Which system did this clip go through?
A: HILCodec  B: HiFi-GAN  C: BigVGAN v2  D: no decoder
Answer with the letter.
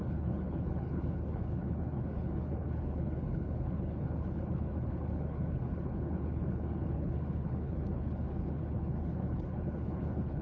A